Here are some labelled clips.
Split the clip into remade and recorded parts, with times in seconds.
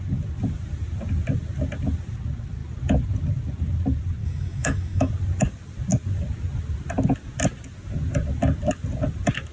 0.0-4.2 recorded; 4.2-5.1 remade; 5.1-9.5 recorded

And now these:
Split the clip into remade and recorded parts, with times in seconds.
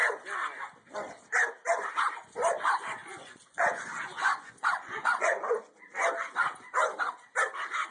0.0-3.0 recorded; 3.0-5.5 remade; 5.5-7.9 recorded